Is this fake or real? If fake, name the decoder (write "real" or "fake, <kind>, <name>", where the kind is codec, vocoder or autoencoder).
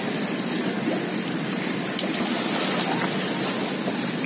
fake, vocoder, BigVGAN v2